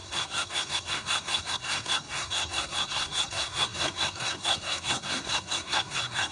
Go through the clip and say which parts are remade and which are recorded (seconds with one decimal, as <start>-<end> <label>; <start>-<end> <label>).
0.0-6.3 remade